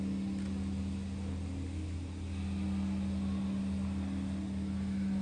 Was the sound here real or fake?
real